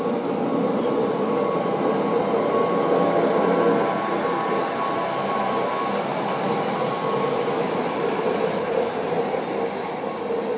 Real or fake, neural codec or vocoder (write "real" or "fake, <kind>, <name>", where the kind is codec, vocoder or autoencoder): real